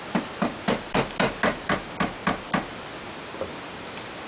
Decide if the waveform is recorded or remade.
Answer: recorded